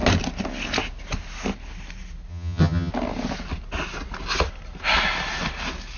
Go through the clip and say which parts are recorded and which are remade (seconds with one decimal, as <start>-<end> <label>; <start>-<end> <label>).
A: 0.0-2.3 recorded; 2.3-2.9 remade; 2.9-6.0 recorded